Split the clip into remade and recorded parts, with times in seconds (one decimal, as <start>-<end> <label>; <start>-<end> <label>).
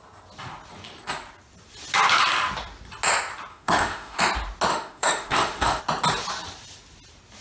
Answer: 0.0-3.5 recorded; 3.5-4.2 remade; 4.2-4.7 recorded; 4.7-5.8 remade; 5.8-7.4 recorded